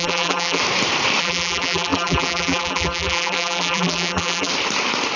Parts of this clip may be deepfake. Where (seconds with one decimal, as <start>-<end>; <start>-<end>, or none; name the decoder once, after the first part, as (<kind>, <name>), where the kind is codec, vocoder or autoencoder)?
0.0-0.6 (vocoder, BigVGAN v2); 1.2-4.5